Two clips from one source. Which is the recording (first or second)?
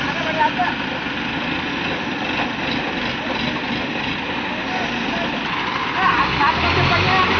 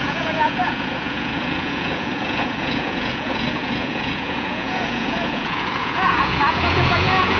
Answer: first